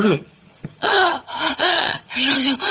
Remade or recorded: remade